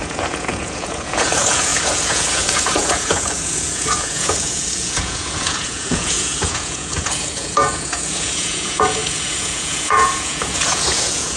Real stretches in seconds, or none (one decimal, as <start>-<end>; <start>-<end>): none